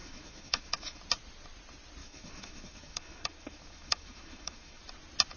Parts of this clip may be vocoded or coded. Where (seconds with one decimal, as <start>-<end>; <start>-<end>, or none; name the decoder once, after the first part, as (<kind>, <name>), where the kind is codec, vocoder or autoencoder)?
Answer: 0.0-1.0 (autoencoder, DAC-VAE); 2.0-4.8